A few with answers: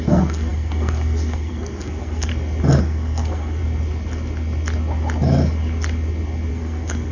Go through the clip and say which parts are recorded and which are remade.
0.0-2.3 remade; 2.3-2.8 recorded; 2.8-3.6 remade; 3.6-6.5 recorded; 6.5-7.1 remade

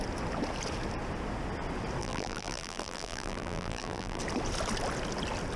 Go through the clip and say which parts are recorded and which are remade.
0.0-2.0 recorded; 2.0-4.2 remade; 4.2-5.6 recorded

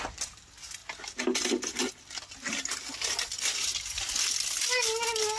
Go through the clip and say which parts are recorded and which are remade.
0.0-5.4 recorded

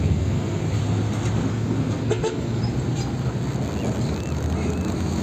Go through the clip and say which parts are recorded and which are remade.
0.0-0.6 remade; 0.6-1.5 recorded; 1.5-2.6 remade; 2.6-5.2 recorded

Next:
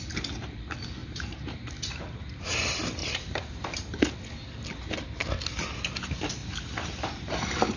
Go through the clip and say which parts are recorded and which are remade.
0.0-1.0 recorded; 1.0-1.7 remade; 1.7-3.0 recorded; 3.0-3.8 remade; 3.8-6.4 recorded; 6.4-7.3 remade; 7.3-7.8 recorded

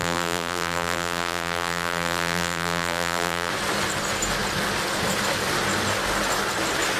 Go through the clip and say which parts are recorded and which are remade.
0.0-3.5 remade; 3.5-7.0 recorded

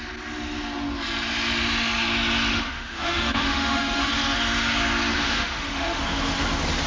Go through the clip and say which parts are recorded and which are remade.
0.0-2.5 recorded; 2.5-4.1 remade; 4.1-5.1 recorded; 5.1-6.0 remade; 6.0-6.9 recorded

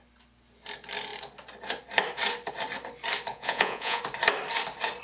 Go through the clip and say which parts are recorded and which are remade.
0.0-3.3 recorded; 3.3-4.0 remade; 4.0-5.0 recorded